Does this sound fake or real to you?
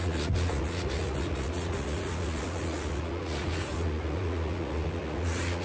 fake